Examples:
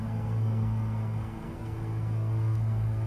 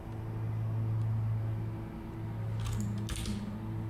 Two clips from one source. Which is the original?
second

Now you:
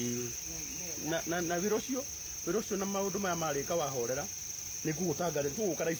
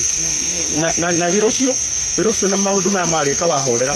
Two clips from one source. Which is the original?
first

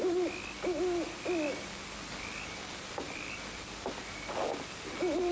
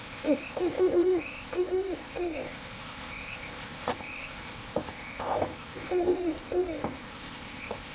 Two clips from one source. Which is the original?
first